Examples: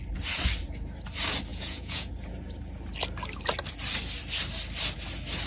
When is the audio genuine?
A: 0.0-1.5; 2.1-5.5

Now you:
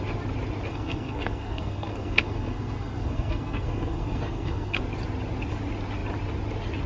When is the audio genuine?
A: 0.0-0.7; 4.8-6.9